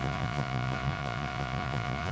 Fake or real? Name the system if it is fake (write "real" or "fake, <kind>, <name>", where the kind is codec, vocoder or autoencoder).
fake, vocoder, Vocos